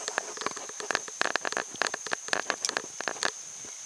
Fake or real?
real